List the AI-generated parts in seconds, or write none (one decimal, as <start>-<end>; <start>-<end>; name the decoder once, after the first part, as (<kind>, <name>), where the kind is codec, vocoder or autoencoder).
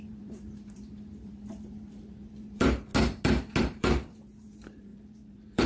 0.0-2.9 (vocoder, BigVGAN v2); 3.6-5.7